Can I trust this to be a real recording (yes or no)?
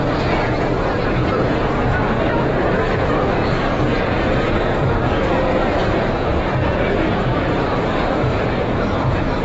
no